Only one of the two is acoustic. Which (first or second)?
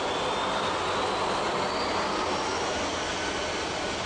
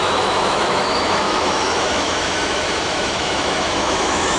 first